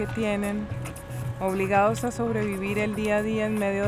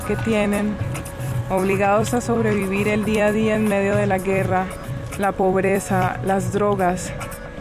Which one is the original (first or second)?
first